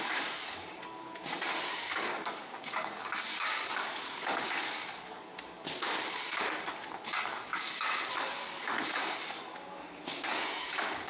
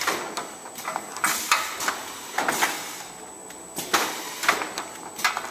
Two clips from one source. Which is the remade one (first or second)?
first